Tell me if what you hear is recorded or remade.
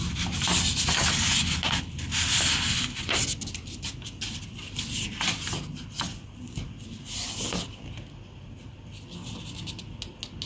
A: recorded